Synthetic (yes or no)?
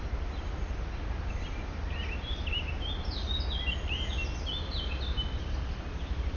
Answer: no